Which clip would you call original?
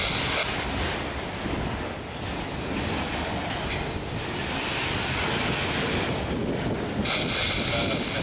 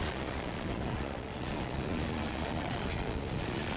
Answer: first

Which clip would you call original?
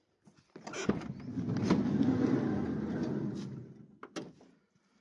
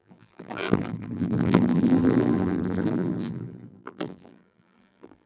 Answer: first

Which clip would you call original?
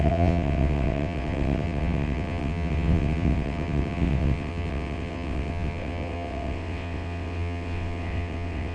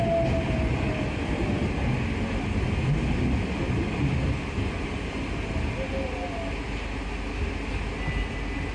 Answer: second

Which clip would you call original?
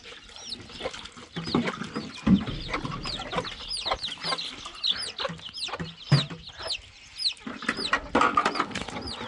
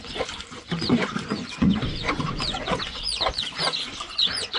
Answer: first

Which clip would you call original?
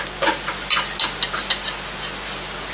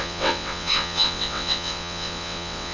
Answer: first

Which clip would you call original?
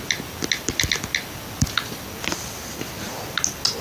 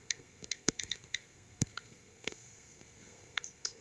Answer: first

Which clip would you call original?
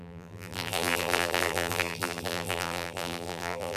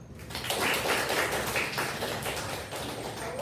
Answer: second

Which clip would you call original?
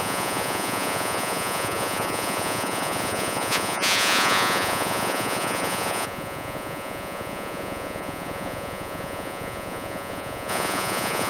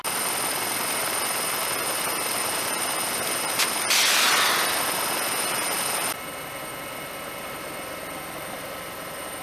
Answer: second